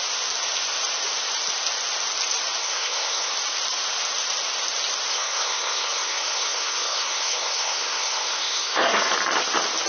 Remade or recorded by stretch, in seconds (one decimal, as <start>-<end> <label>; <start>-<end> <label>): 0.0-2.6 recorded; 2.6-3.3 remade; 3.3-5.1 recorded; 5.1-9.1 remade; 9.1-9.9 recorded